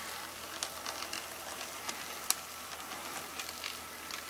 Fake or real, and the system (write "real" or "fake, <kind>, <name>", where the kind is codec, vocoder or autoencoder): real